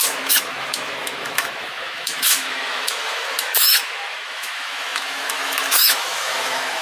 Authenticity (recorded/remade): remade